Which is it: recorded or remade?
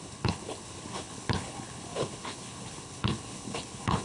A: remade